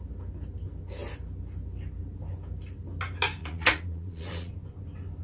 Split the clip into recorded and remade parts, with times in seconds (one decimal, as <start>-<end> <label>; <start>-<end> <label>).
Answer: 0.0-3.4 recorded; 3.4-4.5 remade; 4.5-5.2 recorded